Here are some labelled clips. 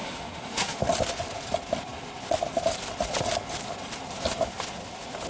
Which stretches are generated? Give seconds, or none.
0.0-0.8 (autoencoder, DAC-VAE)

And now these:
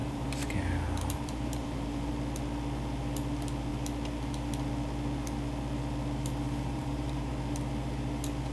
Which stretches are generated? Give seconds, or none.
0.0-2.1 (vocoder, BigVGAN v2); 6.7-7.3

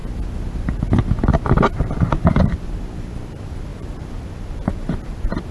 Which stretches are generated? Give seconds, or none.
0.6-1.3 (vocoder, BigVGAN v2); 1.8-3.7; 4.2-5.5

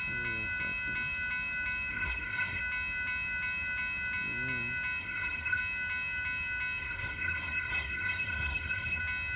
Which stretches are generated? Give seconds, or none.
1.9-2.6 (codec, SNAC); 5.0-5.6; 6.8-9.0

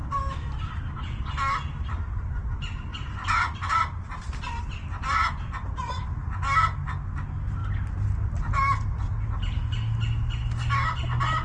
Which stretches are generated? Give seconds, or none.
2.9-4.6 (vocoder, BigVGAN v2)

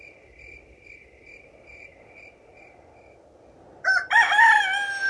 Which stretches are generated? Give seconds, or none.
none

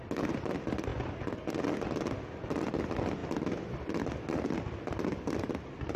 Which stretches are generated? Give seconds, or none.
none